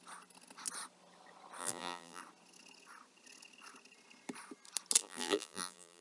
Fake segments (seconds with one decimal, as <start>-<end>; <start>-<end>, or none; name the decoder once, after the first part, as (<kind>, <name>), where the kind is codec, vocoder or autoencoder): 1.6-2.2 (vocoder, BigVGAN v2); 5.0-6.0